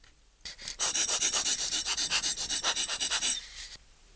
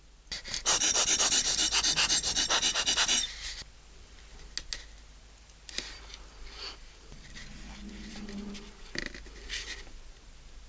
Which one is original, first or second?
second